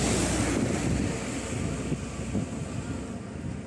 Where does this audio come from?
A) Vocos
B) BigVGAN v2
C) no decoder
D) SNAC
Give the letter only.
C